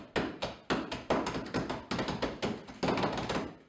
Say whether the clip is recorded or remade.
recorded